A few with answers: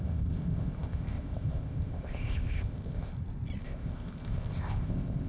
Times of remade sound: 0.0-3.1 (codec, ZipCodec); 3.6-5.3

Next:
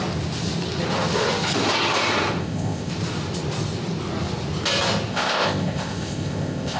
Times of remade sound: 2.4-2.9 (codec, ZipCodec); 5.1-6.8

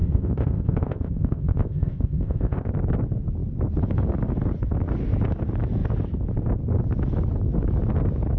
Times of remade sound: 0.0-2.7 (codec, ZipCodec)

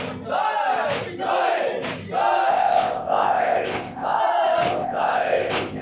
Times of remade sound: 2.5-4.2 (codec, ZipCodec); 4.7-5.8